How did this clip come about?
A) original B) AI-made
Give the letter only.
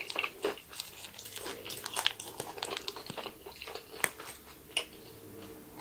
A